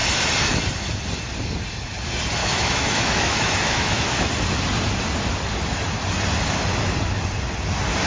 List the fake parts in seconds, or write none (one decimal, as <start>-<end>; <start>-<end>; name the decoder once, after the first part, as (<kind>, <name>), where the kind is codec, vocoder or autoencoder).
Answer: 2.4-4.3 (autoencoder, DAC-VAE)